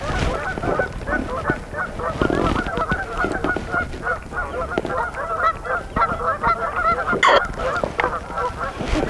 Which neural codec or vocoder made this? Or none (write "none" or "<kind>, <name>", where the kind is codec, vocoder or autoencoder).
none